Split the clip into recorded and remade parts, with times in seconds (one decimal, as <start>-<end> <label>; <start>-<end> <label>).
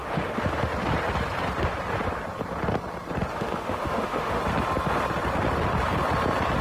0.0-0.7 remade; 0.7-3.3 recorded; 3.3-4.4 remade; 4.4-6.6 recorded